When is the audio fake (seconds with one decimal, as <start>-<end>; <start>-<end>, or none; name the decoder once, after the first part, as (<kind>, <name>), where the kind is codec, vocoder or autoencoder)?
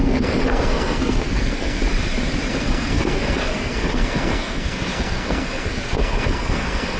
0.0-1.8 (codec, SNAC); 2.5-7.0